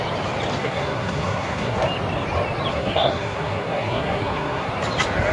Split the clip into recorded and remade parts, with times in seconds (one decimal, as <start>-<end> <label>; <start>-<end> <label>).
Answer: 0.0-0.6 recorded; 0.6-1.8 remade; 1.8-2.7 recorded; 2.7-4.7 remade; 4.7-5.3 recorded